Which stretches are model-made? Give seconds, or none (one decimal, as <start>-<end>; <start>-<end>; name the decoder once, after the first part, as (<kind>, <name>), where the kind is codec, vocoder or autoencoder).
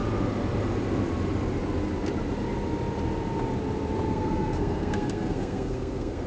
4.1-6.3 (codec, SNAC)